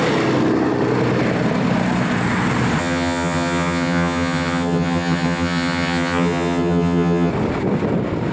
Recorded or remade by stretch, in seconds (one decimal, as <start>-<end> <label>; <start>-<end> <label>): 0.0-2.8 recorded; 2.8-7.3 remade; 7.3-8.3 recorded